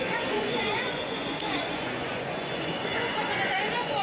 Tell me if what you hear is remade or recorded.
remade